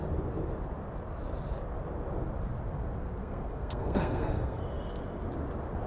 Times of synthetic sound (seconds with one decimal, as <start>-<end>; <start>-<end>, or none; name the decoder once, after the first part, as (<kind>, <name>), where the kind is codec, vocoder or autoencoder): 3.2-4.6 (codec, SNAC)